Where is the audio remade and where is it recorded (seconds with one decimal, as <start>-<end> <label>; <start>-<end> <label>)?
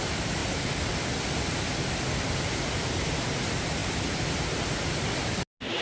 0.0-5.8 recorded